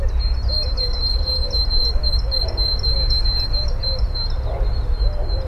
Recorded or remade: recorded